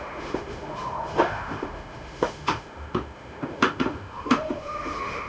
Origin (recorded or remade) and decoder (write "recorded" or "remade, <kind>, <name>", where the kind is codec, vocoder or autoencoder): remade, autoencoder, DAC-VAE